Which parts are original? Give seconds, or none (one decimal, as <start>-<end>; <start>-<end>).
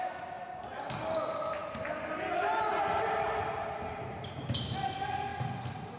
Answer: 0.0-6.0